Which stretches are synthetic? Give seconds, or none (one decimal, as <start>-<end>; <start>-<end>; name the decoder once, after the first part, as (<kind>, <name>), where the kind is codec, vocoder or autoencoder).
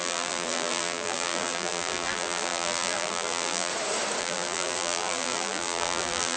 0.0-3.7 (vocoder, BigVGAN v2); 4.2-6.4